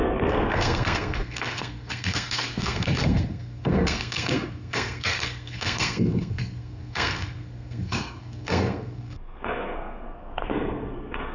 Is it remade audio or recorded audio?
remade